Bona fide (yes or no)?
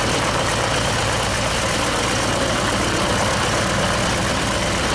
yes